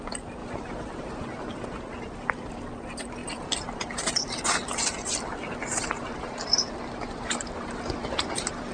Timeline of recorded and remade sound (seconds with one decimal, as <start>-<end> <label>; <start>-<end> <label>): 0.0-8.7 recorded